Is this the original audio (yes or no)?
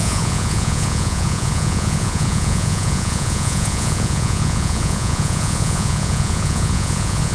no